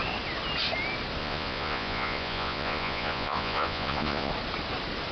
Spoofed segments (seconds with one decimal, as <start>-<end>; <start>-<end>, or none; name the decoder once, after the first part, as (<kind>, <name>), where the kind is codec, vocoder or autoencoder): 1.2-4.3 (vocoder, Vocos)